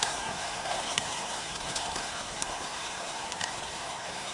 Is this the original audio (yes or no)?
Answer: no